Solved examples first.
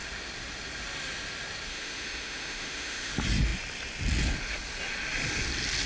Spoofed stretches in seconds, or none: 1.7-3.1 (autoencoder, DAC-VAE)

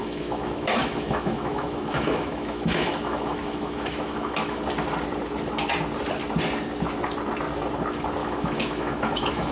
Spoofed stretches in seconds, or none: 0.0-4.6 (autoencoder, DAC-VAE); 8.2-9.5

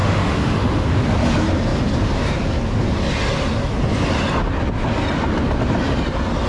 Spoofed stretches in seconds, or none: 0.0-0.9 (autoencoder, DAC-VAE)

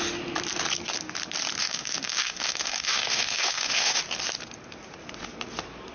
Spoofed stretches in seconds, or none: 1.6-4.0 (autoencoder, DAC-VAE)

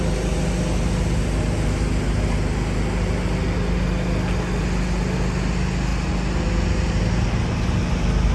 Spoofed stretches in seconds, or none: none

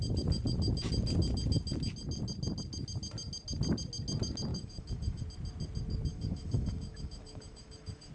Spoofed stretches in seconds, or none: 4.5-5.2 (autoencoder, DAC-VAE); 6.1-8.1

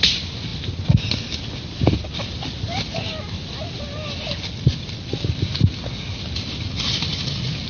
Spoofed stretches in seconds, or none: none

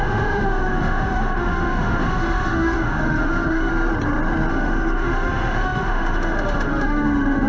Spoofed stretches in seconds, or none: 0.0-3.7 (autoencoder, DAC-VAE); 4.5-7.5